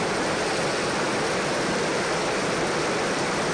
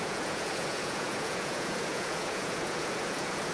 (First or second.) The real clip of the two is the first